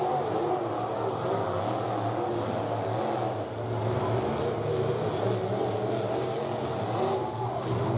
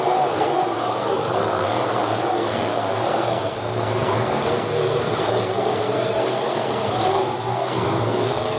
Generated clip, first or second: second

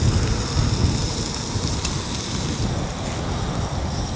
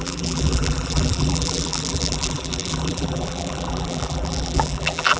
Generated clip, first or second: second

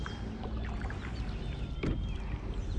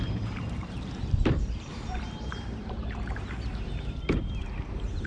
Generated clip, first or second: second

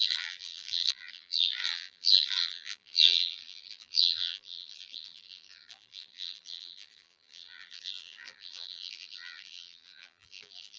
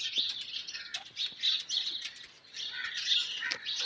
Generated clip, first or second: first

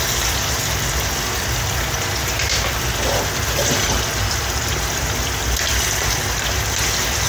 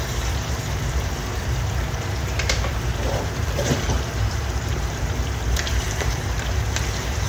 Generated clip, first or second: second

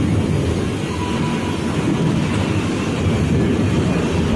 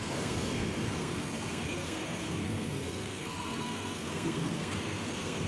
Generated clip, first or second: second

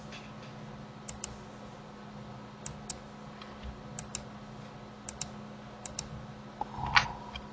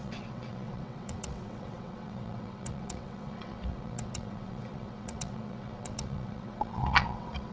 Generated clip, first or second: second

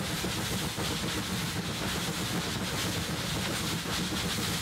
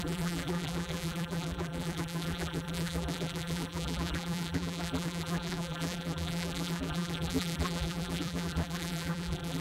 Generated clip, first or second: second